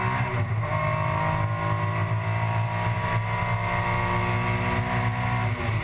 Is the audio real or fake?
real